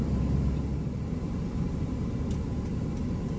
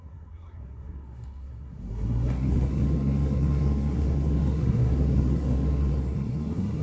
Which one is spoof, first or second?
second